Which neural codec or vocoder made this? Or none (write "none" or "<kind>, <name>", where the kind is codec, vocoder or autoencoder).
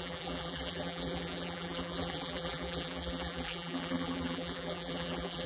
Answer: vocoder, BigVGAN v2